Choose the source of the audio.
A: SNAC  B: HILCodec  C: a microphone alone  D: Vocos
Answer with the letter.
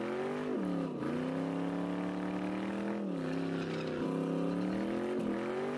C